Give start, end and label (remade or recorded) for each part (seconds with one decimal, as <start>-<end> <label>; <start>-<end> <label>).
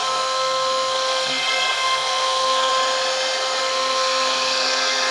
0.0-2.7 remade; 2.7-3.6 recorded; 3.6-5.1 remade